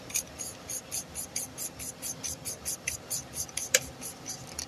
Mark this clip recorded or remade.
remade